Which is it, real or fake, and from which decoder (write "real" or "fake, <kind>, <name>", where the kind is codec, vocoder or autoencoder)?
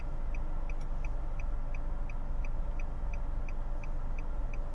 real